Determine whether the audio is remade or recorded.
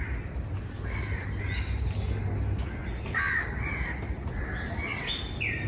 recorded